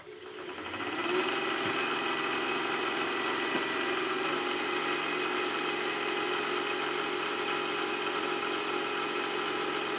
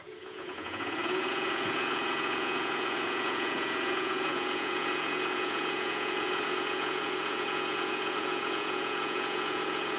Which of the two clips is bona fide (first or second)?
first